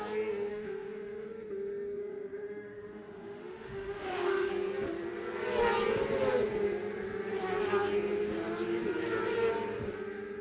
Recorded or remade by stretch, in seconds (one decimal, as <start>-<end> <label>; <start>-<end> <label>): 0.0-0.5 recorded; 0.5-1.3 remade; 1.3-2.0 recorded; 2.0-4.5 remade; 4.5-10.4 recorded